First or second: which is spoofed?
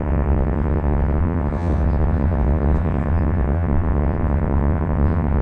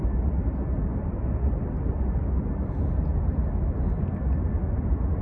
first